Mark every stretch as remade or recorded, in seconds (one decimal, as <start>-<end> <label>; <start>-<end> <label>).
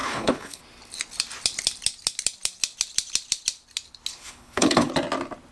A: 0.0-0.6 remade; 0.6-4.1 recorded; 4.1-4.9 remade; 4.9-5.5 recorded